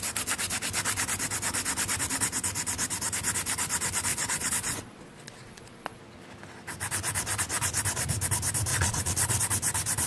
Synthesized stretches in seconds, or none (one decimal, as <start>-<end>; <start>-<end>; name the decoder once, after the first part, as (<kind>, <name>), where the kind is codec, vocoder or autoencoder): 4.1-6.0 (vocoder, Vocos); 8.7-9.4